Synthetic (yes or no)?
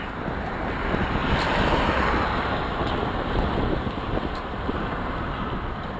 no